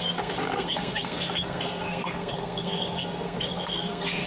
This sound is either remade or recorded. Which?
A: remade